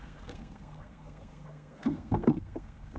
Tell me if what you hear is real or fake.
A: fake